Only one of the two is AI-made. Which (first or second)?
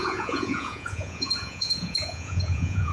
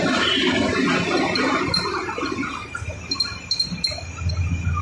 first